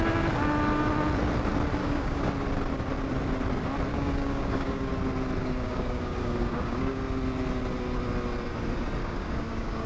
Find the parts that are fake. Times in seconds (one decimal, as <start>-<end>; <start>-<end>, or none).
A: 1.8-2.3; 3.9-4.9; 5.4-7.0; 9.0-9.9